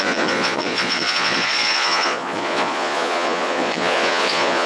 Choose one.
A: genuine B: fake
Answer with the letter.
B